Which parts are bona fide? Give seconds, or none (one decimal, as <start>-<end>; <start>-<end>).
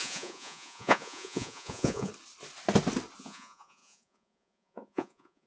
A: 2.1-3.2